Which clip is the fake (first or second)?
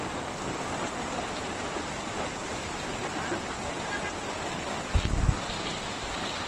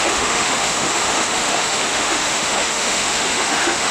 second